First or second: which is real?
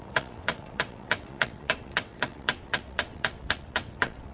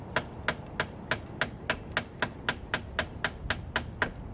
second